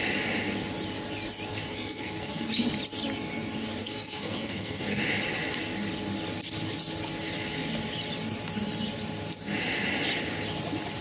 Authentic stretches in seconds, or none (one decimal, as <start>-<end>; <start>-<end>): 0.0-1.5; 2.5-3.8; 5.0-11.0